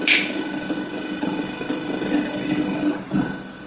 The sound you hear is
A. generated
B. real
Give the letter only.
B